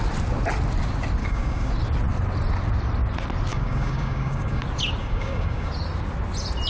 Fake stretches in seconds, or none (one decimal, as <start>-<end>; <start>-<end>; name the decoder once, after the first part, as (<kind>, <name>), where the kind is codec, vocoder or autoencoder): 1.2-1.7 (codec, DAC); 3.5-4.6; 5.0-5.7